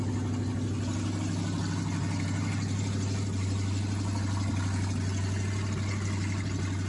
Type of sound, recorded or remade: recorded